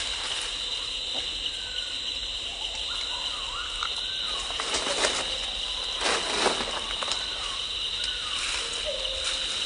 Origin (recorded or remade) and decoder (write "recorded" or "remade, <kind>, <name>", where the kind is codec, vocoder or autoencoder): recorded